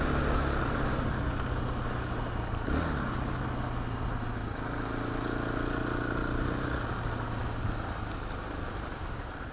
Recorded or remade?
recorded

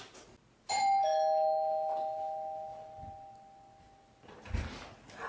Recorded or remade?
recorded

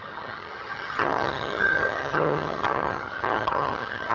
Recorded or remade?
remade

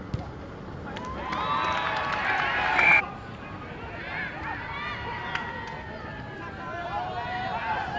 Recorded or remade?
recorded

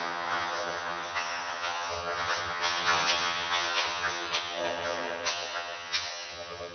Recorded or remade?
remade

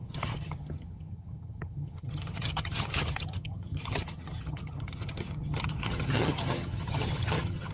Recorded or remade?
remade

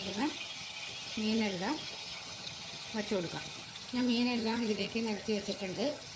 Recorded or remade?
remade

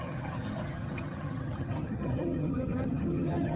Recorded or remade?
remade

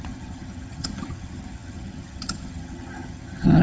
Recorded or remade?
remade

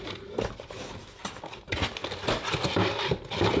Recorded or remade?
recorded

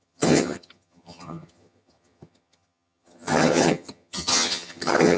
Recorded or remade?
remade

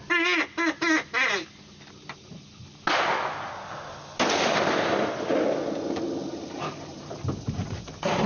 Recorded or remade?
recorded